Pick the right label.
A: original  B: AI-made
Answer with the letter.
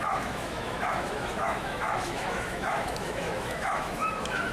B